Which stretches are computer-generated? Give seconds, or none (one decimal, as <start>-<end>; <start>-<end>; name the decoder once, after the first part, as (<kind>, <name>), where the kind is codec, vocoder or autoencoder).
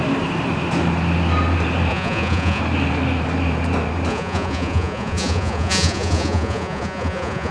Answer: 1.9-2.6 (vocoder, Vocos); 4.1-7.5